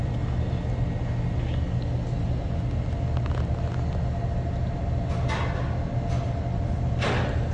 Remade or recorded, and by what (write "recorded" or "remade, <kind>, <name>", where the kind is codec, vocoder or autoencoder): recorded